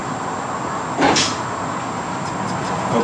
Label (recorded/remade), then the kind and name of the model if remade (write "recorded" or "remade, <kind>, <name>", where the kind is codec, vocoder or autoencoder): recorded